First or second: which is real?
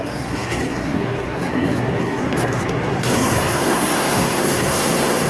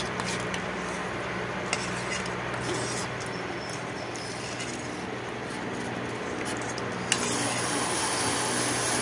second